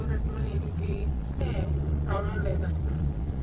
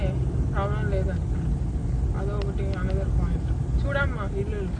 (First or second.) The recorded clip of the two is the second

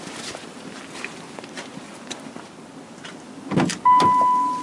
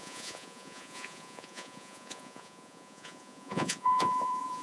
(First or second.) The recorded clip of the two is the first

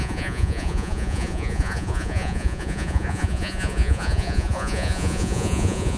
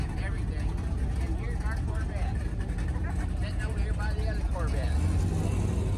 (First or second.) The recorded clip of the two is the second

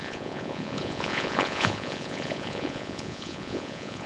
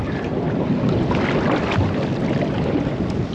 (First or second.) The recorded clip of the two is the second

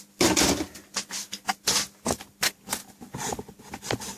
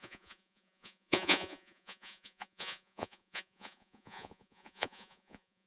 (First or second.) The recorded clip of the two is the first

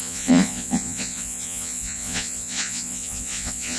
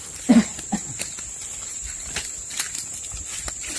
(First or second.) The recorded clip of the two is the second